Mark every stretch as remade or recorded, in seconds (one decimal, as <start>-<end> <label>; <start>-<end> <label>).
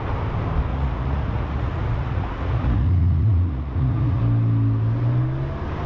0.0-0.7 recorded; 0.7-4.2 remade; 4.2-5.9 recorded